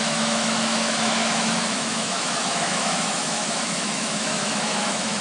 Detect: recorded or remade remade